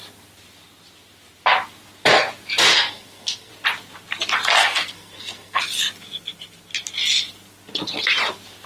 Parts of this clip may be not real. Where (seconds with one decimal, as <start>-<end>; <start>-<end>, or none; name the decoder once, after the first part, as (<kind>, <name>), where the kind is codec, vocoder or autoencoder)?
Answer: 2.7-3.5 (codec, SNAC); 4.6-5.6